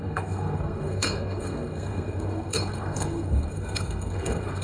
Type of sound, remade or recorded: remade